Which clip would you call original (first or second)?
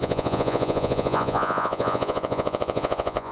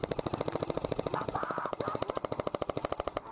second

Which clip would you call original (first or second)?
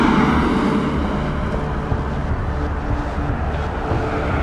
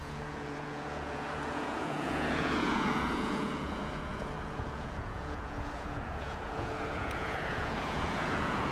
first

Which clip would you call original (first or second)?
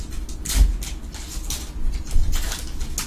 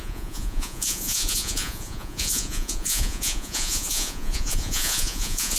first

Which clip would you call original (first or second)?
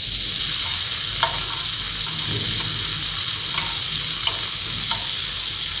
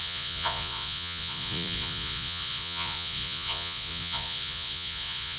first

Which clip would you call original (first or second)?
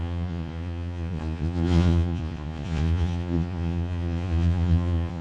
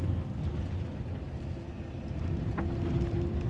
second